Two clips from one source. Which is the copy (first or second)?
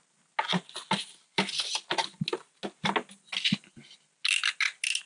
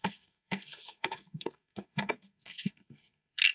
second